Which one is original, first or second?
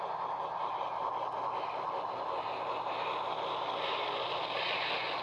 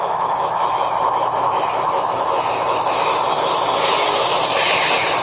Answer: first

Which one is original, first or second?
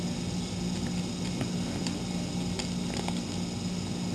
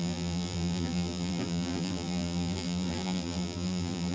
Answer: first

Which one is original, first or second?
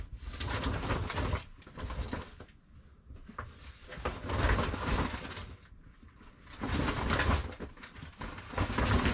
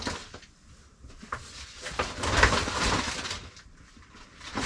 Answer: first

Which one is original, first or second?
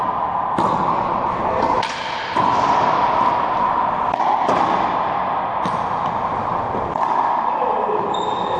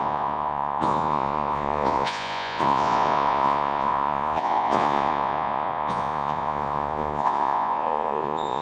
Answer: first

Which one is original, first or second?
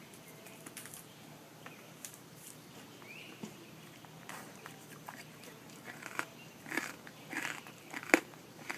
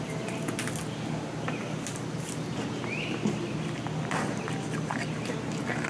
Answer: second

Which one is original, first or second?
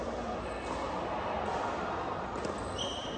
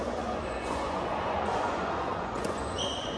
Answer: first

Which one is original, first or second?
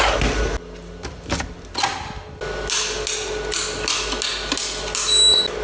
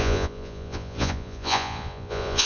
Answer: first